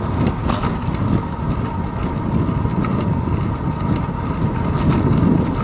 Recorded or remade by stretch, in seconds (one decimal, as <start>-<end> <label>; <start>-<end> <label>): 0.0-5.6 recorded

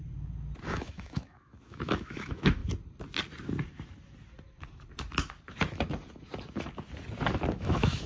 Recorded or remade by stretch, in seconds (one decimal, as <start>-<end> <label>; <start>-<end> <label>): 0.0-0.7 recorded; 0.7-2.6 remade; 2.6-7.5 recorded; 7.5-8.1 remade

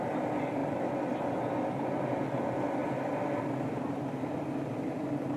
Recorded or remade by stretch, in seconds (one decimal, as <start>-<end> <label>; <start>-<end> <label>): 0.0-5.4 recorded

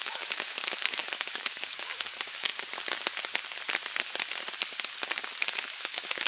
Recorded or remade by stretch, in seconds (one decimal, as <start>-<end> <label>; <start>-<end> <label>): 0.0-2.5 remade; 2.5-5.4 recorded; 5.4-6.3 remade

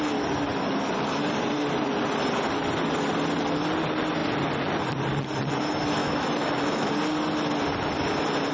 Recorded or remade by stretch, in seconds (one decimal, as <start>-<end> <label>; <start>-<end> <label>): 0.0-6.0 recorded; 6.0-6.9 remade; 6.9-8.5 recorded

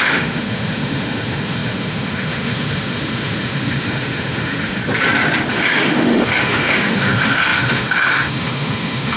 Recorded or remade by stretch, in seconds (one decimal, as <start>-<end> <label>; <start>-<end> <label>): 0.0-4.8 remade; 4.8-5.5 recorded; 5.5-9.2 remade